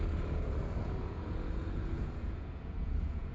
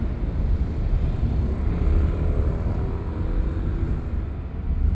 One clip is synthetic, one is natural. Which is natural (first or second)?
second